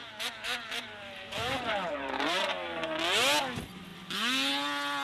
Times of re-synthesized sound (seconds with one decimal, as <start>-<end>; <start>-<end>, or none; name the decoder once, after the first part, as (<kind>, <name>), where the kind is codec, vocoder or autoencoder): 0.0-3.0 (vocoder, BigVGAN v2)